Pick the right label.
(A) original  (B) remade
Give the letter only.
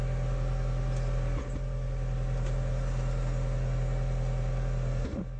A